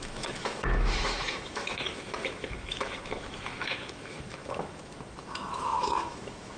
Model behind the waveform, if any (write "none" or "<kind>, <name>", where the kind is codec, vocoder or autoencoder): autoencoder, DAC-VAE